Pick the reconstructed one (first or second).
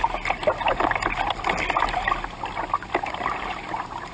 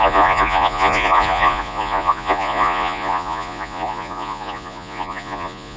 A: second